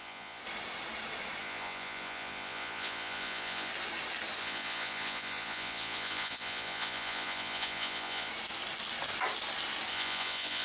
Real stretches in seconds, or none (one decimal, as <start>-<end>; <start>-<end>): 0.4-1.4; 3.7-4.4; 8.3-9.9